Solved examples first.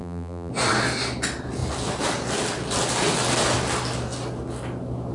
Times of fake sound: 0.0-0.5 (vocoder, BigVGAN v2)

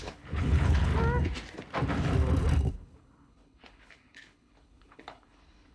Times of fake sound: 0.0-0.9 (codec, HILCodec); 2.7-5.7

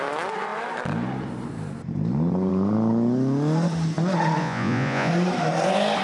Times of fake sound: 4.4-5.1 (vocoder, Vocos)

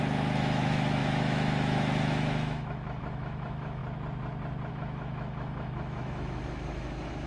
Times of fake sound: 0.0-3.8 (autoencoder, DAC-VAE); 4.7-7.3

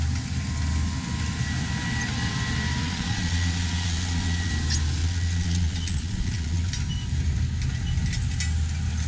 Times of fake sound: 2.8-4.5 (vocoder, Vocos); 5.0-6.7

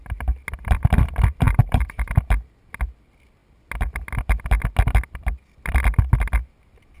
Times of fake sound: 1.6-2.2 (vocoder, BigVGAN v2)